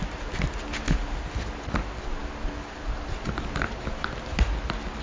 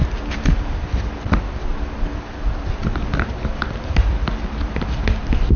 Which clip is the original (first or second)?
first